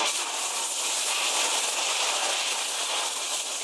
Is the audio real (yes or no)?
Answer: no